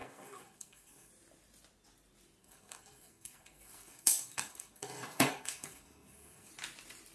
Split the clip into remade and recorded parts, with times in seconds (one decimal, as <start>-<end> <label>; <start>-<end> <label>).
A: 0.0-1.1 remade; 1.1-2.4 recorded; 2.4-6.5 remade; 6.5-7.1 recorded